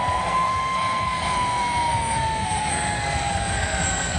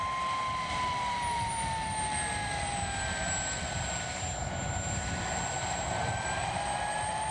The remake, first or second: first